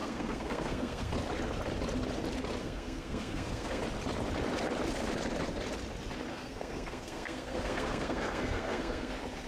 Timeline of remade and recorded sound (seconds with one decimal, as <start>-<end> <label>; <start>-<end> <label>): 0.0-1.1 remade; 1.1-2.6 recorded; 2.6-3.8 remade; 3.8-6.3 recorded; 6.3-9.1 remade; 9.1-9.5 recorded